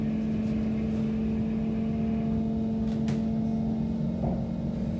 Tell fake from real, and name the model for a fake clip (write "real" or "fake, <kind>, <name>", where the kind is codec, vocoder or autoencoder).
real